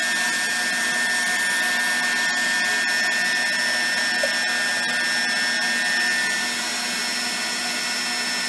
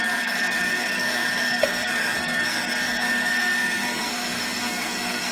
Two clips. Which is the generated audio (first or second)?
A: second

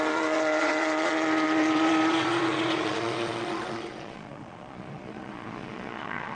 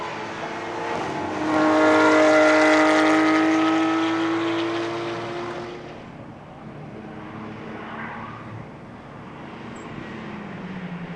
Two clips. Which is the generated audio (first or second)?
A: first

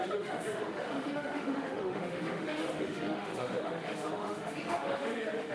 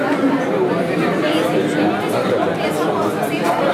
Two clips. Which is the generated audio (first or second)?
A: first